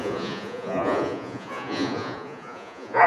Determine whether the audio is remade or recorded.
remade